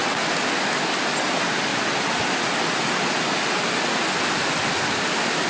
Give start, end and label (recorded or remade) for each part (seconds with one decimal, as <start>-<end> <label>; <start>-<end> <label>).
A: 0.0-5.5 recorded